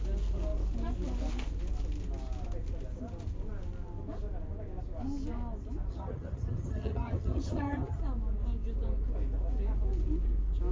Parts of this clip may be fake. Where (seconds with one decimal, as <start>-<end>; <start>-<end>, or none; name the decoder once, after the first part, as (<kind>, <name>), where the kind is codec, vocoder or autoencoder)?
5.9-8.0 (vocoder, HiFi-GAN)